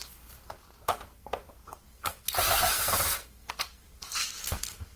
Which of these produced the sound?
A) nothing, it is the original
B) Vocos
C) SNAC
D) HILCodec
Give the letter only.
C